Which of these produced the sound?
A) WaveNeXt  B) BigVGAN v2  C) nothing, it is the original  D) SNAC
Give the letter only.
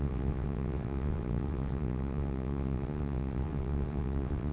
A